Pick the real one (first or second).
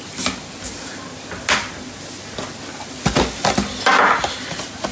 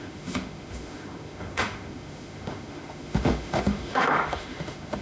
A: first